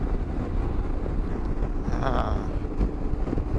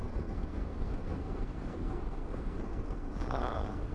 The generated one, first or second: second